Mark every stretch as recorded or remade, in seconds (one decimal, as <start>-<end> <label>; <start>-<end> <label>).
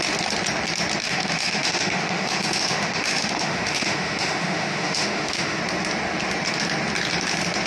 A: 0.0-1.0 recorded; 1.0-5.6 remade; 5.6-7.7 recorded